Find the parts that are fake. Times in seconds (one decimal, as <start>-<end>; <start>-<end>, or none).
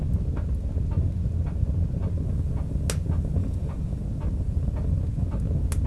3.4-4.0